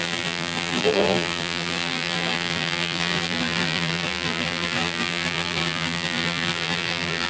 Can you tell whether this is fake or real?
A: fake